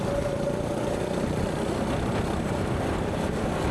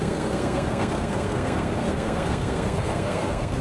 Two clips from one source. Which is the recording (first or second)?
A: first